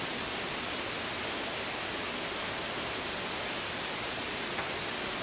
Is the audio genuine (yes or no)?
yes